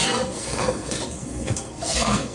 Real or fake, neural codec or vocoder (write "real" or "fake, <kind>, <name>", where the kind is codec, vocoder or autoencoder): fake, codec, SNAC